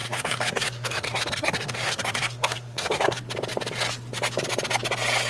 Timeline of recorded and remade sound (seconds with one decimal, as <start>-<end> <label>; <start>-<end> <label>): 0.0-3.2 remade; 3.2-5.3 recorded